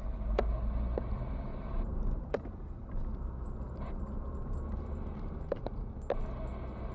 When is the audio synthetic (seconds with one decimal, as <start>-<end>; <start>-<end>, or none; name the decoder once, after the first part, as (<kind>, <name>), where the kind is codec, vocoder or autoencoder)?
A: 1.5-5.6 (vocoder, BigVGAN v2)